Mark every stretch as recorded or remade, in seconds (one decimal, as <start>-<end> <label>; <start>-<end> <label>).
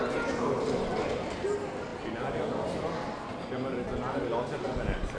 0.0-5.2 recorded